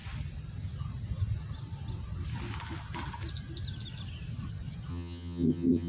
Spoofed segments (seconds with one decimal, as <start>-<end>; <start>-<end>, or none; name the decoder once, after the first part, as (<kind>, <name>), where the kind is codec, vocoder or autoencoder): 4.9-5.9 (vocoder, HiFi-GAN)